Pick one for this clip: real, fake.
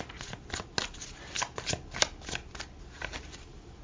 real